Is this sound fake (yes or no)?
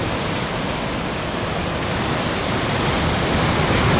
no